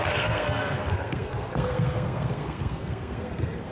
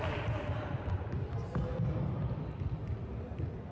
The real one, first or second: second